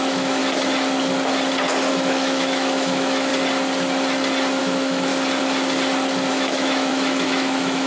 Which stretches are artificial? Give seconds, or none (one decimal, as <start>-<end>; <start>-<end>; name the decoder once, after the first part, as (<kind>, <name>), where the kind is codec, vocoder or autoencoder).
0.0-0.4 (autoencoder, DAC-VAE); 1.9-3.3; 4.6-5.1; 6.3-7.9